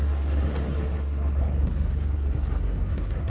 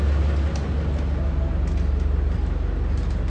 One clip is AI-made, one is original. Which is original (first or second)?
second